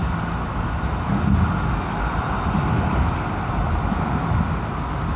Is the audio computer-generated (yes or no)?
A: no